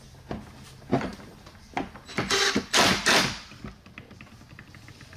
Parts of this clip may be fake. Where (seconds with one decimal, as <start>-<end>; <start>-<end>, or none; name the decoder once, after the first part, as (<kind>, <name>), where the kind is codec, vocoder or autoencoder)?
none